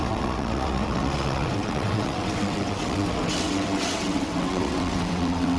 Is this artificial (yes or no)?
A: yes